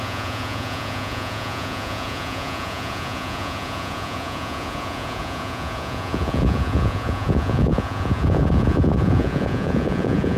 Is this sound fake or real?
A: fake